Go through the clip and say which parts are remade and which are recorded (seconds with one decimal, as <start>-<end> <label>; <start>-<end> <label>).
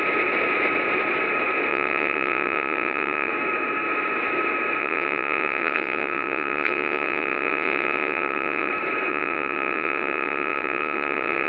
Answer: 0.0-1.7 recorded; 1.7-3.3 remade; 3.3-4.8 recorded; 4.8-8.7 remade; 8.7-9.1 recorded; 9.1-11.5 remade